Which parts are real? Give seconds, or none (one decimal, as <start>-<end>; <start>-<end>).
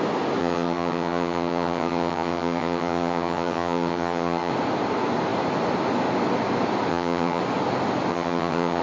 0.0-0.4; 4.5-6.9; 7.4-8.1